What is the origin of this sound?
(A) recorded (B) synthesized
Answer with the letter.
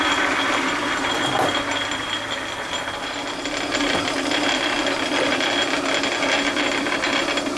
A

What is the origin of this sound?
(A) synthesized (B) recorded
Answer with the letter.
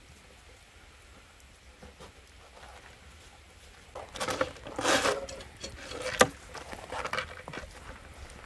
B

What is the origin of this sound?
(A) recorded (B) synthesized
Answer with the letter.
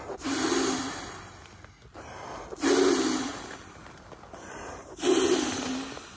A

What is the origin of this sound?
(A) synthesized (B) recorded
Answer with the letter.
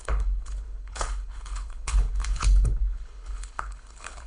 A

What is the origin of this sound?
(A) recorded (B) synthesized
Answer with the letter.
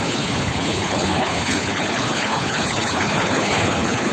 B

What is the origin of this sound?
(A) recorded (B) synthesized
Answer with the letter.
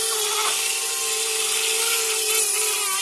A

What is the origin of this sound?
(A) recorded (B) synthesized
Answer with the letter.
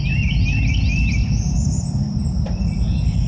A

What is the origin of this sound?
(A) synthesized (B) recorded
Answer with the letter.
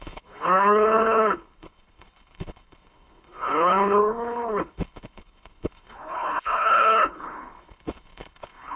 A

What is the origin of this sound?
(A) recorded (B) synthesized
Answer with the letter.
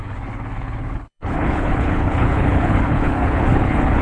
B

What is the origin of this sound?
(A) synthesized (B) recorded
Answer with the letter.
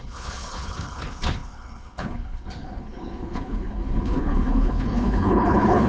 A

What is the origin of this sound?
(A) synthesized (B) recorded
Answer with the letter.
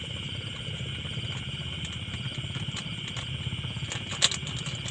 B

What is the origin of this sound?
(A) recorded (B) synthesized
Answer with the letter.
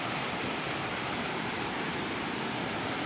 A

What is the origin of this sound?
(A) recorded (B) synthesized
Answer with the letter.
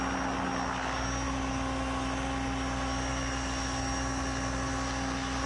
A